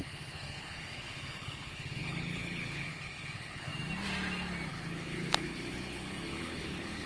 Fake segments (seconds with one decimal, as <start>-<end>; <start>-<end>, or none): 0.0-3.7; 4.7-7.1